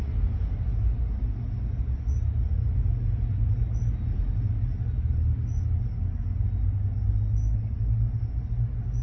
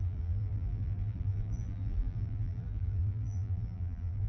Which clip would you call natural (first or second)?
first